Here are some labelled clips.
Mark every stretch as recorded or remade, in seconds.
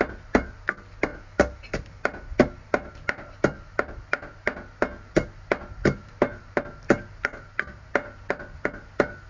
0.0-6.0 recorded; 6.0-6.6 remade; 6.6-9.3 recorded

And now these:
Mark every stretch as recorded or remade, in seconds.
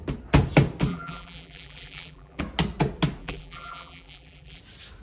0.0-0.9 recorded; 0.9-2.4 remade; 2.4-3.2 recorded; 3.2-4.6 remade; 4.6-5.0 recorded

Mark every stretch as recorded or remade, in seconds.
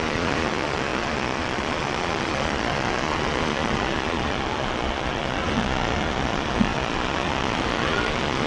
0.0-8.5 remade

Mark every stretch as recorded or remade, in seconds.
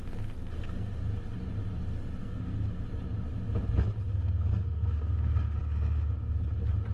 0.0-1.0 remade; 1.0-2.2 recorded; 2.2-2.8 remade; 2.8-4.1 recorded; 4.1-5.6 remade; 5.6-6.9 recorded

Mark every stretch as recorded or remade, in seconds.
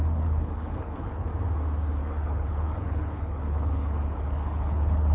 0.0-1.3 remade; 1.3-2.0 recorded; 2.0-5.1 remade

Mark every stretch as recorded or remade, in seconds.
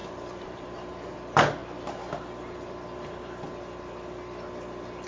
0.0-0.9 remade; 0.9-5.1 recorded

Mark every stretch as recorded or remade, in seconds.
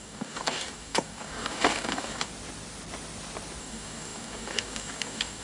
0.0-2.3 remade; 2.3-3.6 recorded; 3.6-5.4 remade